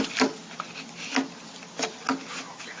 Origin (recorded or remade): recorded